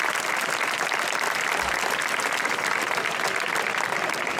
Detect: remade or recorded remade